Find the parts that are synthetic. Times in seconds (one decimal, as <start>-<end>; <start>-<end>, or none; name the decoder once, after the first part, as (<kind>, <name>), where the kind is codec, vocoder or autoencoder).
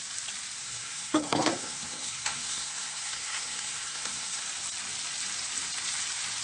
0.6-4.4 (codec, SNAC)